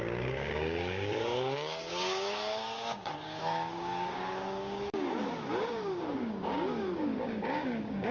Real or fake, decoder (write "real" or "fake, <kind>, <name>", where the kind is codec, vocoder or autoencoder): fake, codec, DAC